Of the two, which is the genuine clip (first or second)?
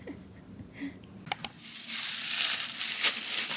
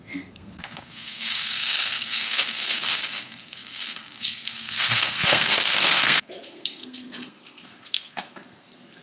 first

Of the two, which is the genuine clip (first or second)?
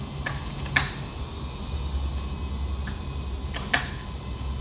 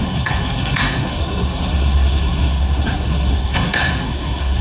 first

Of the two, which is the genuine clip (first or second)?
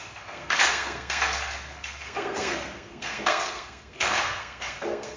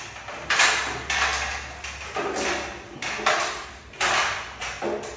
second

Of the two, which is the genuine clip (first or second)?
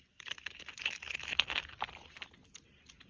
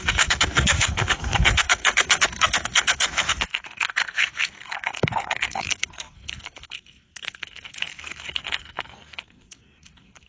first